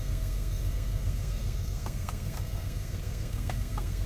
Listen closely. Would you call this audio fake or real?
fake